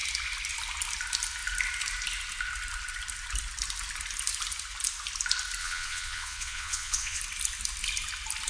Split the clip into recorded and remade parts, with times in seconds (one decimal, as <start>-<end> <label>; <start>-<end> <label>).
0.0-5.6 recorded; 5.6-7.2 remade; 7.2-8.5 recorded